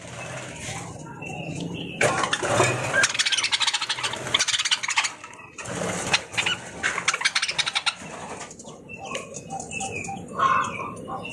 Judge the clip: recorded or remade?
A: recorded